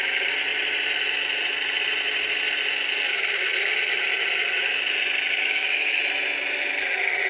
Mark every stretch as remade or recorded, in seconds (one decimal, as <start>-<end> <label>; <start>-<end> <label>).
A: 0.0-5.4 recorded; 5.4-6.0 remade; 6.0-7.3 recorded